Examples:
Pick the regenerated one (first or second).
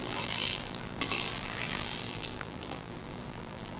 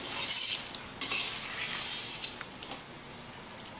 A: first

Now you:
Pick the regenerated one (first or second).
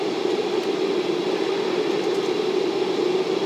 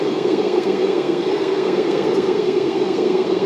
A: second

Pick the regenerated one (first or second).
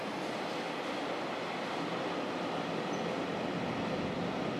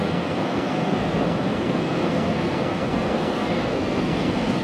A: second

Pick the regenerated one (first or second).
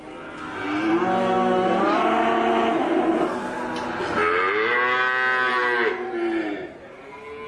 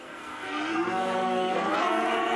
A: second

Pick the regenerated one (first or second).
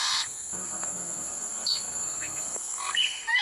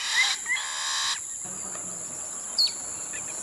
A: first